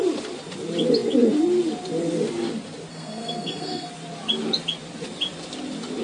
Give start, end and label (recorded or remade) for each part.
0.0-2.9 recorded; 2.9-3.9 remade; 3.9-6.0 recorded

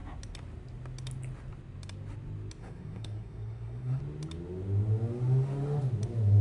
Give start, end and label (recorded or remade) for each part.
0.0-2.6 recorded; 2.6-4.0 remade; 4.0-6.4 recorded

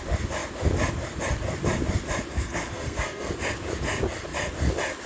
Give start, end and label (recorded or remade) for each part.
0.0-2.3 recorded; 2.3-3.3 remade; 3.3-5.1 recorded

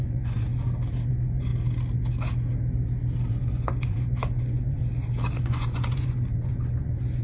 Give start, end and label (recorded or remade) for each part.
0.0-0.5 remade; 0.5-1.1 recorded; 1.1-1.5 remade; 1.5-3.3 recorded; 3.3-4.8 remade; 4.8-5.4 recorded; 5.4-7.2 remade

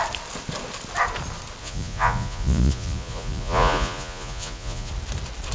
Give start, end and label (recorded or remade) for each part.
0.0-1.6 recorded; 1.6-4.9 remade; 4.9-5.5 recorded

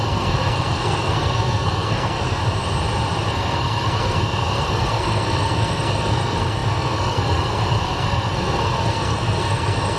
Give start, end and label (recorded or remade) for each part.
0.0-2.4 remade; 2.4-3.3 recorded; 3.3-10.0 remade

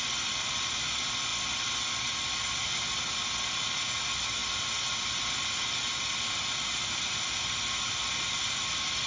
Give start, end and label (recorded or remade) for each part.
0.0-9.1 recorded